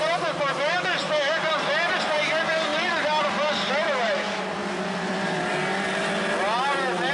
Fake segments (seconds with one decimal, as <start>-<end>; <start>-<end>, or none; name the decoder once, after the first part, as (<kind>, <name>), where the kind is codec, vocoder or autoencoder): 0.0-4.6 (vocoder, BigVGAN v2)